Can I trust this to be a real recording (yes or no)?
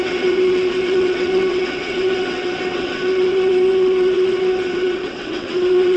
no